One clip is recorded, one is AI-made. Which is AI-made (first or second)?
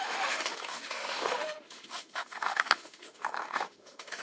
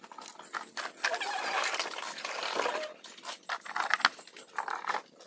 first